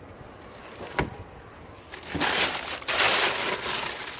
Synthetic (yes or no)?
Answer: no